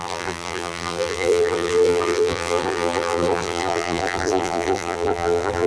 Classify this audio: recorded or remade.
remade